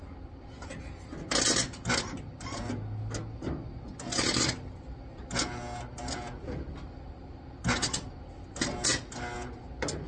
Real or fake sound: real